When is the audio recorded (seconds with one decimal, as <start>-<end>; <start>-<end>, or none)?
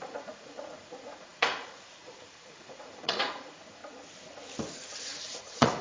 3.8-5.2